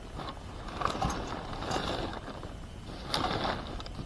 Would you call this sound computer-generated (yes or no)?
no